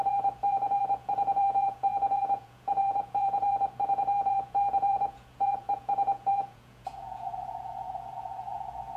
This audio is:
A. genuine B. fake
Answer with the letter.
B